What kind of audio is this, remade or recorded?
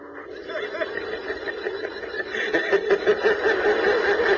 recorded